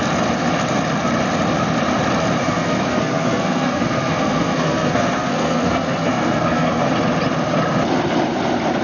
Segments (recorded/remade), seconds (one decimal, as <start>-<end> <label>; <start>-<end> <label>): 0.0-2.4 recorded; 2.4-6.9 remade; 6.9-8.8 recorded